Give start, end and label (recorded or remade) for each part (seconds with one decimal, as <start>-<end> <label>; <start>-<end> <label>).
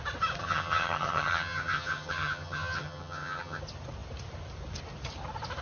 0.0-0.4 recorded; 0.4-3.6 remade; 3.6-5.6 recorded